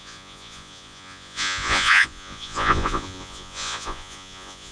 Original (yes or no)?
no